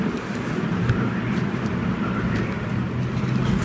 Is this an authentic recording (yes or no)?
yes